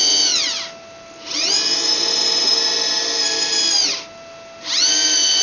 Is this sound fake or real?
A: real